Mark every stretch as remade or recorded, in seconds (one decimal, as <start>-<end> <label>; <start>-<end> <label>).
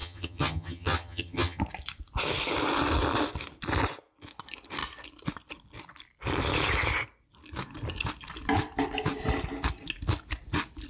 0.0-1.6 remade; 1.6-10.9 recorded